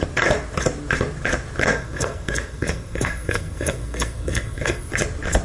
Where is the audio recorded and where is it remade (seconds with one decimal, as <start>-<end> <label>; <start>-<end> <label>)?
0.0-1.7 recorded; 1.7-4.9 remade; 4.9-5.4 recorded